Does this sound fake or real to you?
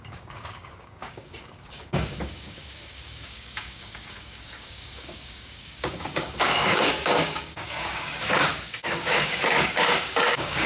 fake